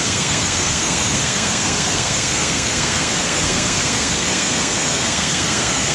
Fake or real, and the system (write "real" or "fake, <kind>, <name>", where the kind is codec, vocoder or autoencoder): fake, codec, SNAC